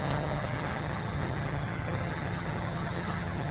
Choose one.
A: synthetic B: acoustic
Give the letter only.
A